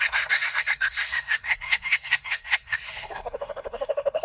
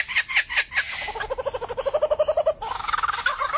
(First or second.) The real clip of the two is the second